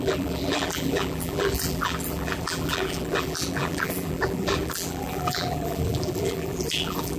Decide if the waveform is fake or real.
fake